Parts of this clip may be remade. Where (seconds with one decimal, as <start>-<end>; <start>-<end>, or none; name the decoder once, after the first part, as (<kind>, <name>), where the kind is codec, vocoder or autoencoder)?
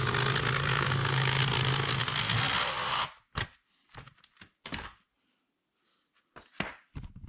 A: 0.7-1.4 (codec, DAC)